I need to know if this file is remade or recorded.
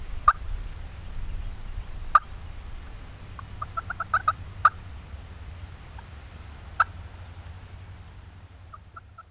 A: recorded